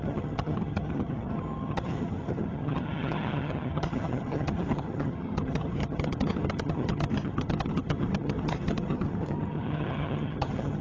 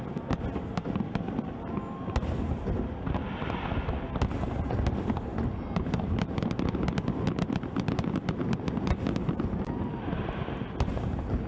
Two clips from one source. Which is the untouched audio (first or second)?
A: second